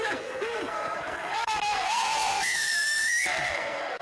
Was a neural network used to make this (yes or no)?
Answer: yes